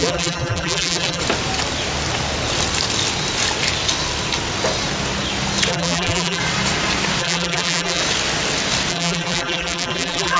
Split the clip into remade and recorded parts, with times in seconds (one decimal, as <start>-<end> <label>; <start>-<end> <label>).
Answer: 0.0-1.2 remade; 1.2-5.7 recorded; 5.7-6.4 remade; 6.4-7.2 recorded; 7.2-8.0 remade; 8.0-8.9 recorded; 8.9-10.4 remade